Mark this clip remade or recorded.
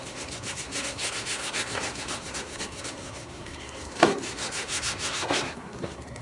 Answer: remade